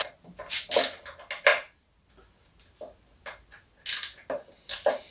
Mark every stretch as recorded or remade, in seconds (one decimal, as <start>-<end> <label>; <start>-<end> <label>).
0.0-5.1 recorded